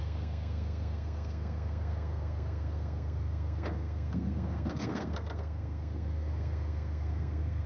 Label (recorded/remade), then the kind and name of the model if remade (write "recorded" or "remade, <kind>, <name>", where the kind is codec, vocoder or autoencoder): remade, codec, SNAC